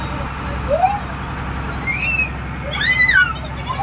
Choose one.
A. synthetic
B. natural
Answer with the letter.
B